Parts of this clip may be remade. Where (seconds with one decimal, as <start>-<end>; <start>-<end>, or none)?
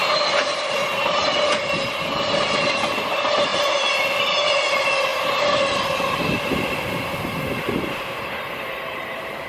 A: none